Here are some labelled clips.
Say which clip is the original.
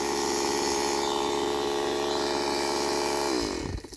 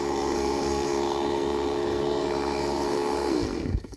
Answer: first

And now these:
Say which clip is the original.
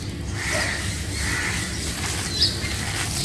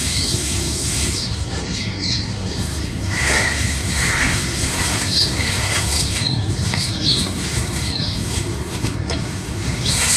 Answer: first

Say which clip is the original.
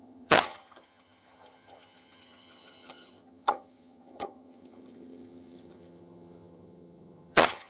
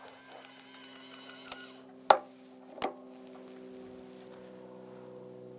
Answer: second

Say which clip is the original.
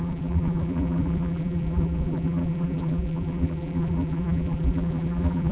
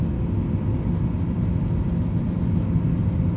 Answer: second